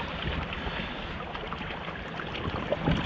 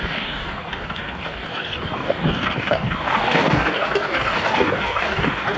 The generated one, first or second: second